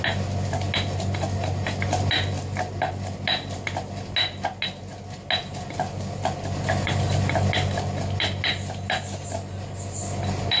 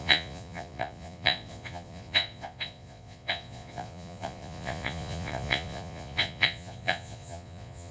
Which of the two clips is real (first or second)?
first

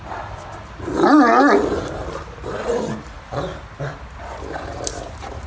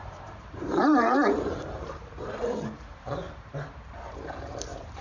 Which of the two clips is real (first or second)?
first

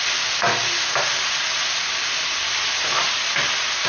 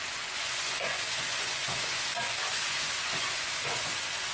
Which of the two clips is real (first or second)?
first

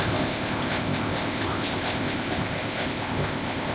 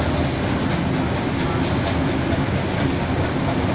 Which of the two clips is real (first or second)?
second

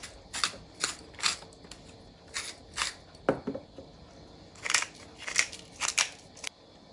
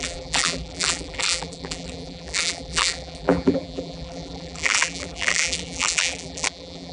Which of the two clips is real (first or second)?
first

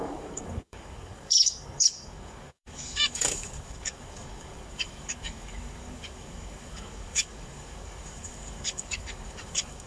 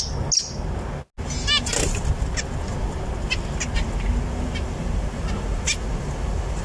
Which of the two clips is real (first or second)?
second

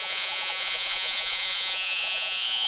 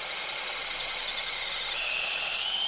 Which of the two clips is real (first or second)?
second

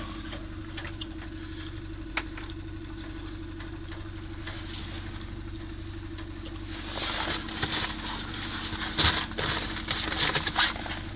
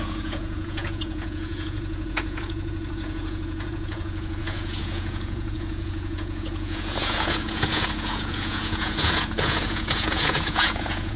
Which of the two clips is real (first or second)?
first